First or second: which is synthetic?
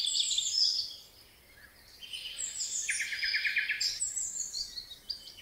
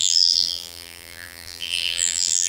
second